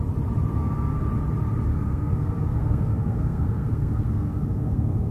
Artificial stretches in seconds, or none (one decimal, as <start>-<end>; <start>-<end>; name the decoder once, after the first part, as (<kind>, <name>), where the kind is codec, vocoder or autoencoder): 0.5-1.0 (codec, SNAC); 1.7-5.1